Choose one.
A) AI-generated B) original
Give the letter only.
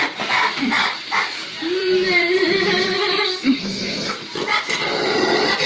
A